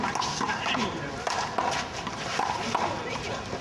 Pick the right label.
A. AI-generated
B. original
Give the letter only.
B